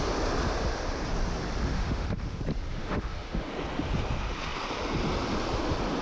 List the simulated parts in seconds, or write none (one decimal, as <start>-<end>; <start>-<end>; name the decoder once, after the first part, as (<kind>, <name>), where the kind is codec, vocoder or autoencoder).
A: 1.7-2.4 (autoencoder, DAC-VAE); 2.8-3.5